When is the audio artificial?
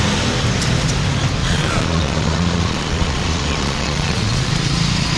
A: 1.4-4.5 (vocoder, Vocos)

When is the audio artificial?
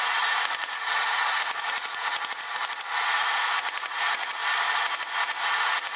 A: 0.0-4.4 (vocoder, Vocos); 5.5-6.0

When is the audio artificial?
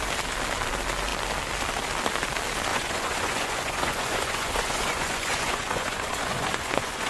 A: 2.7-7.1 (vocoder, Vocos)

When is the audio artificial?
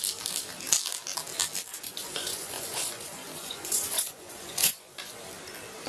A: 1.7-5.2 (vocoder, Vocos)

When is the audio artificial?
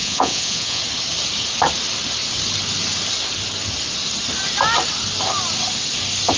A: 0.0-0.8 (vocoder, Vocos)